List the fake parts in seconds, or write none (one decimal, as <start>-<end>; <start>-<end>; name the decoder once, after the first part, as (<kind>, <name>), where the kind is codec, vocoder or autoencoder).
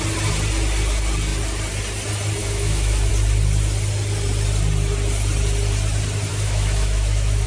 2.4-3.1 (autoencoder, DAC-VAE); 6.3-7.5